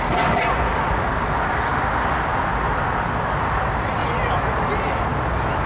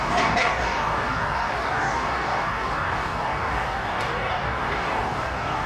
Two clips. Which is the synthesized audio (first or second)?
second